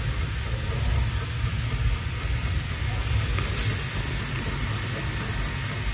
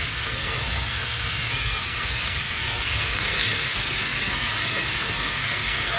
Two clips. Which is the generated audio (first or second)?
second